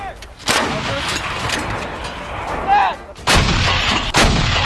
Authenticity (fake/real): real